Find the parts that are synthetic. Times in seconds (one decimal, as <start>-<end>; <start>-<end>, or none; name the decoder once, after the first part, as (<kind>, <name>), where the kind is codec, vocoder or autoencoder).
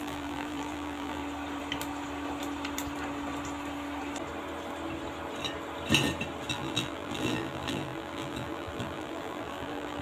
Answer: 0.0-1.2 (vocoder, BigVGAN v2); 6.5-10.0